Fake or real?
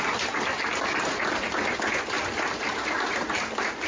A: real